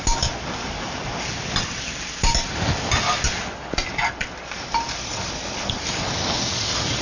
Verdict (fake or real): real